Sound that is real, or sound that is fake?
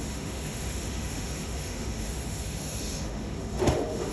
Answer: fake